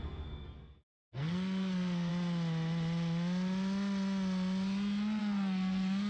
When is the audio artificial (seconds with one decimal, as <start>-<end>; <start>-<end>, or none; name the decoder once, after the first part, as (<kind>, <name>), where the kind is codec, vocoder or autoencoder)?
0.0-2.1 (codec, SNAC); 5.2-6.1